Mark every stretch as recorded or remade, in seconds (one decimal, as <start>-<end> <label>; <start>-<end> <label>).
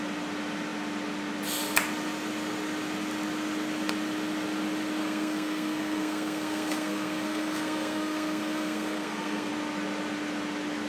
0.0-5.0 recorded; 5.0-9.5 remade; 9.5-10.9 recorded